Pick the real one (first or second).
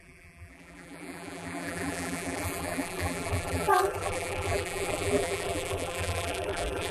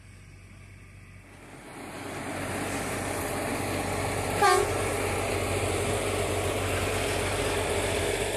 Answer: second